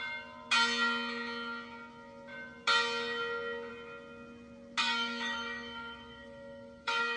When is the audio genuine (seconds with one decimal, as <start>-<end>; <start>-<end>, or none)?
0.0-4.8